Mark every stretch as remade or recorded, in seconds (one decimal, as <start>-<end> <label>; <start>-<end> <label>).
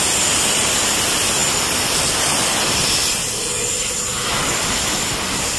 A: 0.0-1.4 recorded; 1.4-4.8 remade; 4.8-5.6 recorded